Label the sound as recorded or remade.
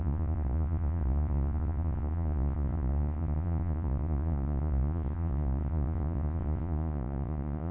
remade